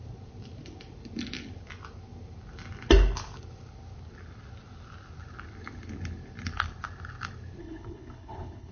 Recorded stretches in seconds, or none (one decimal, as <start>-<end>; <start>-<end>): 0.0-7.6